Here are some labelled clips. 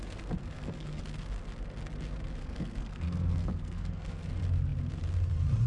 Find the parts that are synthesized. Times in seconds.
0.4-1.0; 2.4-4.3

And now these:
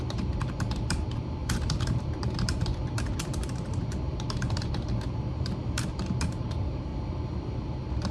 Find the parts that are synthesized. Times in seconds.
0.0-6.9; 7.6-8.1

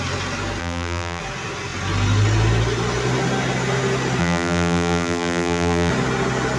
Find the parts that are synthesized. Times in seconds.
0.6-1.2; 4.2-5.9

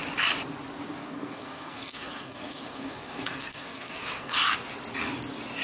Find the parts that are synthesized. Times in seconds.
1.0-4.4

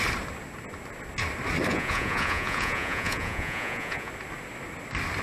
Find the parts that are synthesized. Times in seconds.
1.7-4.1

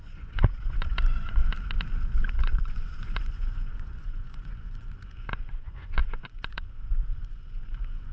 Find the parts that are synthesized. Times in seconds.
0.0-1.4; 2.4-8.1

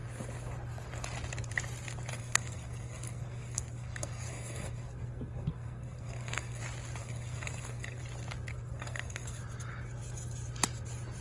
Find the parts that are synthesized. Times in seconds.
2.1-6.6; 7.0-8.0; 8.5-9.4